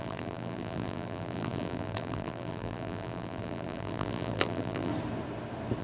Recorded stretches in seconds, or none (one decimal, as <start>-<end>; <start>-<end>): 4.9-5.8